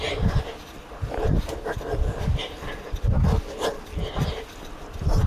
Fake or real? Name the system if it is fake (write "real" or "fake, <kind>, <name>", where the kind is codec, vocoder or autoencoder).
real